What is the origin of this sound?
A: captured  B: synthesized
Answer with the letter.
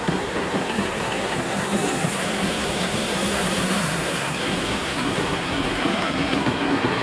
B